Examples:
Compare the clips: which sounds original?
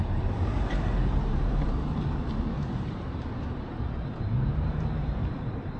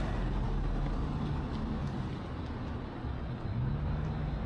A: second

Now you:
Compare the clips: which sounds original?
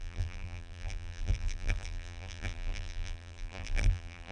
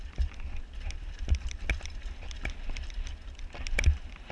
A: second